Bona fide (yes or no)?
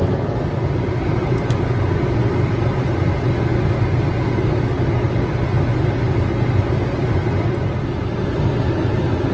yes